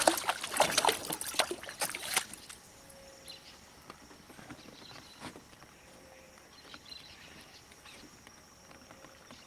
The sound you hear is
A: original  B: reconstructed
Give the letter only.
A